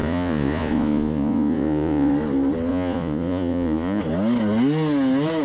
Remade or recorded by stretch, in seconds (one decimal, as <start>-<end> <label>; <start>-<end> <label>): 0.0-2.1 remade; 2.1-2.7 recorded; 2.7-4.0 remade; 4.0-5.4 recorded